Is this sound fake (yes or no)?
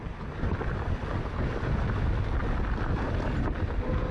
no